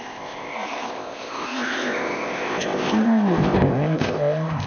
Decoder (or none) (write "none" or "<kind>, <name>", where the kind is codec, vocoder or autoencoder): codec, ZipCodec